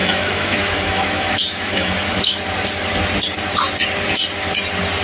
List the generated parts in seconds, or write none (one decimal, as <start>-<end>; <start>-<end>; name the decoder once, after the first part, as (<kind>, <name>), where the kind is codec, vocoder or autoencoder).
0.0-2.4 (autoencoder, DAC-VAE)